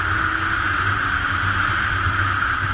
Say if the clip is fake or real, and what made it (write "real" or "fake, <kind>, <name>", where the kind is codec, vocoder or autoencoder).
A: real